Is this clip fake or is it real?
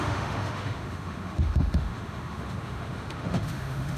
fake